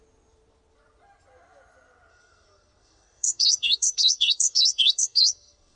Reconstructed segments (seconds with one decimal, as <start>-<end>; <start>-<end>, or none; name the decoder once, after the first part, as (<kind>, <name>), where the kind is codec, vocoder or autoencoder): 2.1-5.8 (codec, SNAC)